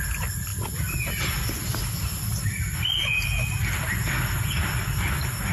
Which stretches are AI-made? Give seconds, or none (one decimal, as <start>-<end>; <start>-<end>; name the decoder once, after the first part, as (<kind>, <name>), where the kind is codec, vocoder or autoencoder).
none